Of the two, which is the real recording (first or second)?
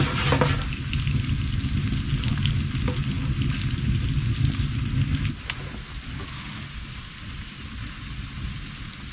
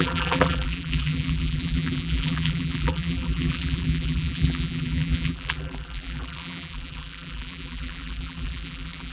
first